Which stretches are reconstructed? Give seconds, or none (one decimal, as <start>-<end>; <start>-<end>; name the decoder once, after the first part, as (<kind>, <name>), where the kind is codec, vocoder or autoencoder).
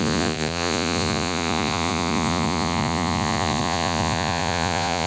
0.0-5.1 (vocoder, Vocos)